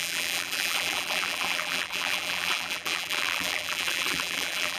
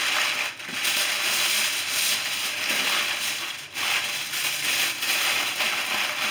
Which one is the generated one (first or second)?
first